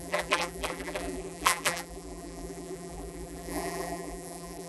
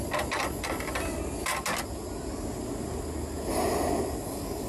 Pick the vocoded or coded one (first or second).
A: first